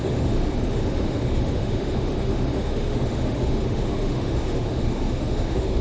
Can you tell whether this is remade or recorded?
remade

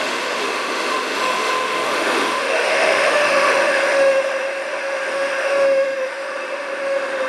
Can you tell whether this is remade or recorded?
remade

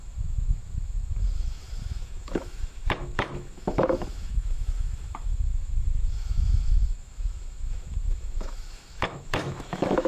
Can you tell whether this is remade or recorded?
remade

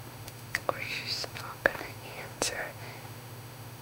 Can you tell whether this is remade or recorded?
remade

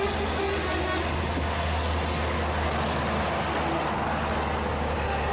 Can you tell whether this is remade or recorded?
recorded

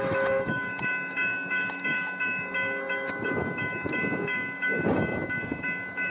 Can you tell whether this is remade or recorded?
remade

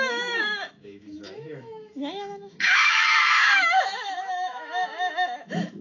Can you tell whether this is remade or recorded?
remade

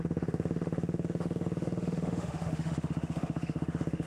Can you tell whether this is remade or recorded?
remade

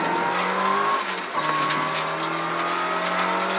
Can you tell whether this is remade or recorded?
recorded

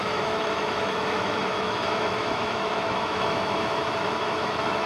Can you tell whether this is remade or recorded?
remade